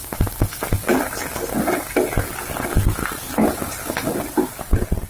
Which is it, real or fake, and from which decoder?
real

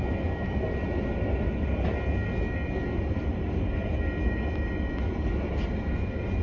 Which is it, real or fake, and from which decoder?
real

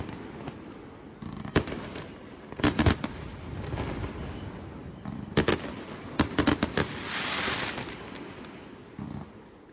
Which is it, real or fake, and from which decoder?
real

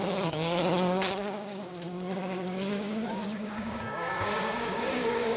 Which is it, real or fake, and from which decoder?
fake, codec, DAC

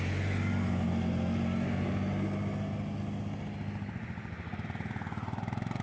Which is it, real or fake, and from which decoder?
real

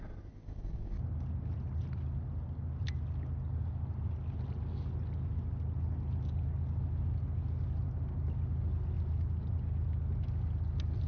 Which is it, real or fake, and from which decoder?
real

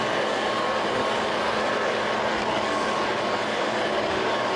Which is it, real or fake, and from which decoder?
fake, codec, DAC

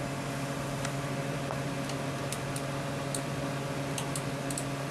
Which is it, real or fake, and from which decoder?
real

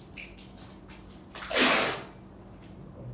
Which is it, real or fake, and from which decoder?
real